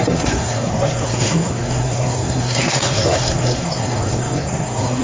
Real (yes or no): no